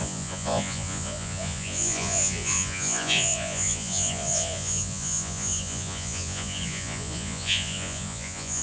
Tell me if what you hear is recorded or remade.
remade